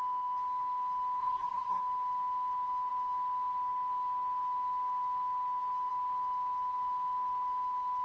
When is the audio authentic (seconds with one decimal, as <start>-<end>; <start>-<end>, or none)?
0.0-1.2; 1.8-8.0

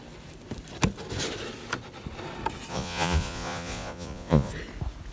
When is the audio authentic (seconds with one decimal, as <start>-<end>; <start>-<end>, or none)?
0.0-2.7; 4.5-5.1

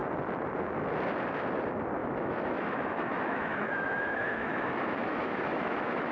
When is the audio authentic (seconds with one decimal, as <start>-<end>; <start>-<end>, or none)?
0.0-2.0

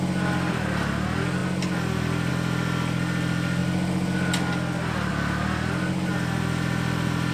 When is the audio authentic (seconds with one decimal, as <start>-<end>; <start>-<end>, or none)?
0.0-7.3